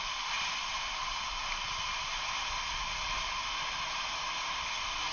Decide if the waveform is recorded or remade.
recorded